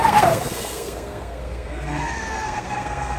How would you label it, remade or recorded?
remade